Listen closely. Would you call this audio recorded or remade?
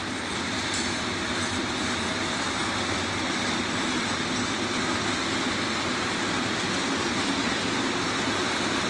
recorded